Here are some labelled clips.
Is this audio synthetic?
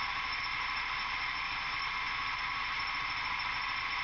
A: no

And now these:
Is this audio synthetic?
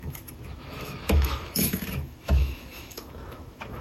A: yes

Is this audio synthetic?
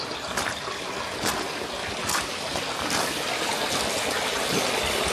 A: no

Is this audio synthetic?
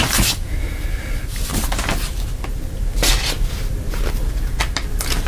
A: no